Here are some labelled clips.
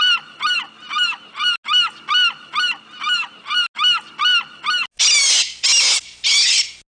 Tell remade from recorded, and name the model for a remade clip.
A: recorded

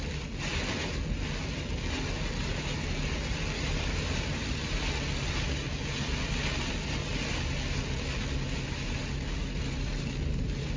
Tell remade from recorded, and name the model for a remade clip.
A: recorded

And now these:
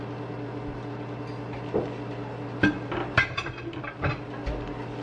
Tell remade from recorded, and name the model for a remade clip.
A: recorded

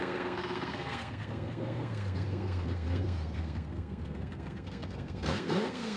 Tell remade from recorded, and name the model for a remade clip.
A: remade, codec, SNAC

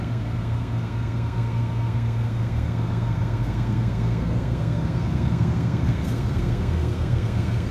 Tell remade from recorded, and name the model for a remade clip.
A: remade, codec, SNAC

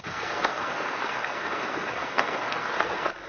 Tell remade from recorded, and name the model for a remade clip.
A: remade, codec, SNAC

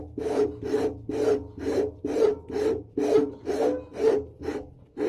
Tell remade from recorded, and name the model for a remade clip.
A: recorded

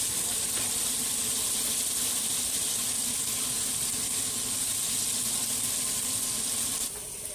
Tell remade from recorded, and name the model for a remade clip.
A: recorded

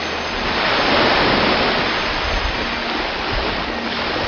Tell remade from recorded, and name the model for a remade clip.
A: recorded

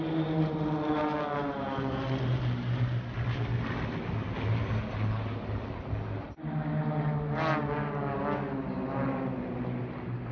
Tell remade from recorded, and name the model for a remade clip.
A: recorded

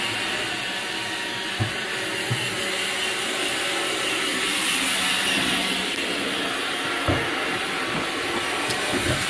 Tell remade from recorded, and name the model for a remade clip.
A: recorded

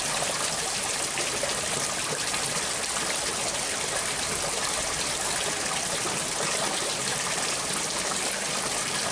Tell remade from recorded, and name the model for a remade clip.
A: recorded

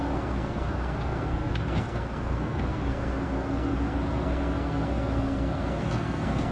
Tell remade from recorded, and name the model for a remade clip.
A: remade, codec, SNAC